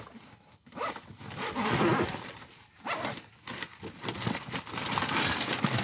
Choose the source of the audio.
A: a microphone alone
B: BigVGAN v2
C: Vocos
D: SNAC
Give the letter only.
A